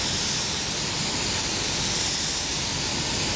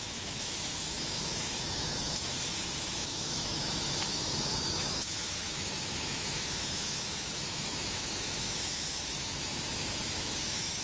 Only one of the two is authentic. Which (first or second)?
first